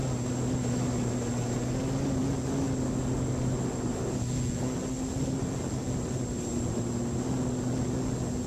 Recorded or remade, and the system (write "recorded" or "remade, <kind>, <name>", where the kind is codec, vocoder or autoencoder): recorded